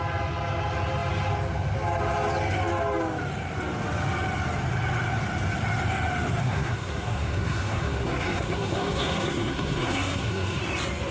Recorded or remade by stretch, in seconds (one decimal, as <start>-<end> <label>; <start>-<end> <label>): 0.0-6.4 recorded; 6.4-10.6 remade; 10.6-11.1 recorded